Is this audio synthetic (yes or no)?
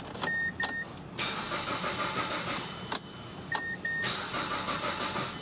no